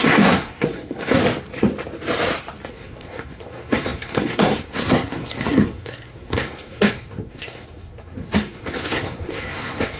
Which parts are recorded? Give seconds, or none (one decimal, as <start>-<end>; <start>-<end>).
1.2-2.7